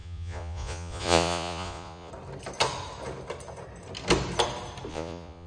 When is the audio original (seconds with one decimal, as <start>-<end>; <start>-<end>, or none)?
2.1-4.9